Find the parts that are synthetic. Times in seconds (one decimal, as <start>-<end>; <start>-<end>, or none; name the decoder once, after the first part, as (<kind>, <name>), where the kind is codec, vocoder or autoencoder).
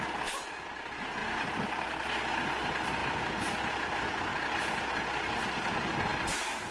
none